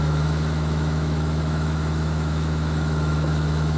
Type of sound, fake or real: fake